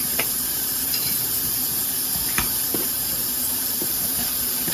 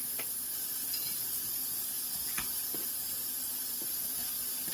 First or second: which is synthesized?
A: first